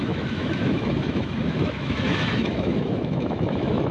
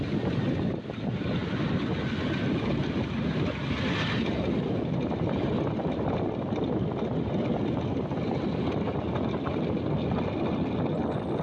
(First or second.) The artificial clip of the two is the first